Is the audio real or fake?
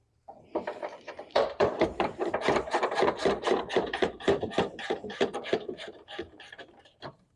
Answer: fake